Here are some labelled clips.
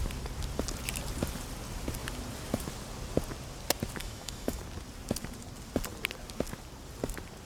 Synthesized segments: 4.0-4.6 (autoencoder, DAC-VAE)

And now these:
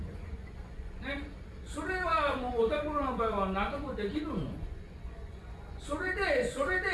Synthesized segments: 0.0-1.1 (vocoder, Vocos); 1.6-6.9

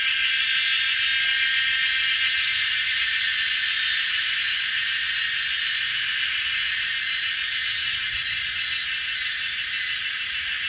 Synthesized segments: 7.8-8.7 (vocoder, Vocos)

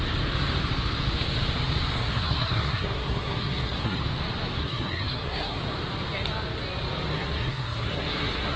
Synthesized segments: 2.0-4.0 (codec, SNAC); 4.6-5.6; 7.1-8.6

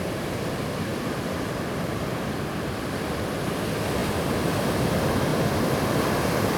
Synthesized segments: 0.0-4.0 (vocoder, BigVGAN v2); 4.6-5.3; 6.1-6.6

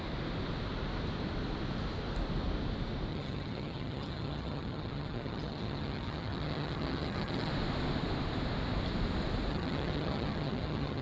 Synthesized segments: 3.1-7.5 (vocoder, HiFi-GAN); 9.5-11.0

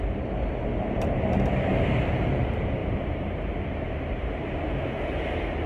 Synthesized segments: 0.7-1.2 (vocoder, BigVGAN v2); 1.7-2.4; 2.8-5.2

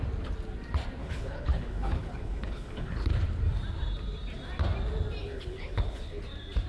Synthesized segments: 1.0-3.1 (codec, HILCodec); 5.2-6.2